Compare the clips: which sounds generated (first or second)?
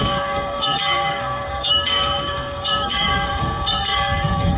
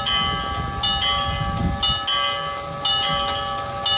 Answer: first